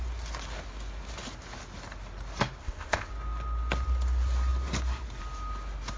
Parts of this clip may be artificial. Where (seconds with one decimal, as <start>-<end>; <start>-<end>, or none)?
2.6-3.1